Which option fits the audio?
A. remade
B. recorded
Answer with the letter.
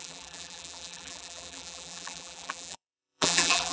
A